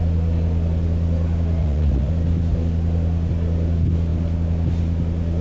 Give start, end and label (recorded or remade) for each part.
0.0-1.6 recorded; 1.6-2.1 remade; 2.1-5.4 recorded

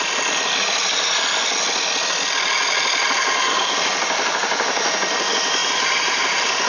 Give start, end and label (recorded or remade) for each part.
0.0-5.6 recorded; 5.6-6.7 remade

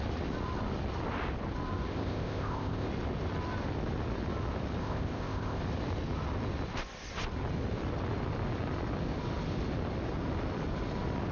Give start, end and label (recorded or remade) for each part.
0.0-1.9 recorded; 1.9-2.9 remade; 2.9-4.8 recorded; 4.8-5.6 remade; 5.6-11.3 recorded

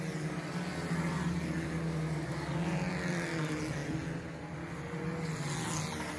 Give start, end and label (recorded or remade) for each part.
0.0-6.2 recorded

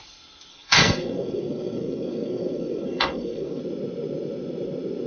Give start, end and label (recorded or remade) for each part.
0.0-0.5 recorded; 0.5-3.6 remade; 3.6-5.1 recorded

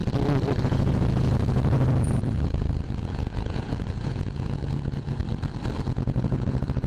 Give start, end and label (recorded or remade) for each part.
0.0-0.6 recorded; 0.6-5.2 remade; 5.2-5.8 recorded; 5.8-6.9 remade